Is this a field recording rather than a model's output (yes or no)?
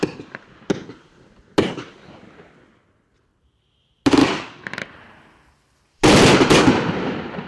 yes